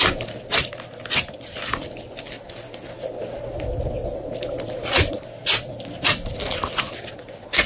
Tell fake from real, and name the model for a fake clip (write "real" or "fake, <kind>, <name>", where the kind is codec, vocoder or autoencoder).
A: real